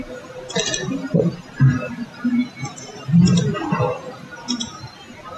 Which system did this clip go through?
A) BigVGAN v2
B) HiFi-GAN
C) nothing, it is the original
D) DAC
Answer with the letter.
C